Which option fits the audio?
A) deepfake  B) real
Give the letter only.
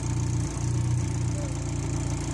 B